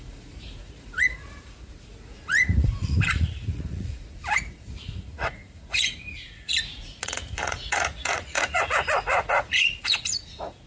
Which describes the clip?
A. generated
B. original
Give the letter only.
A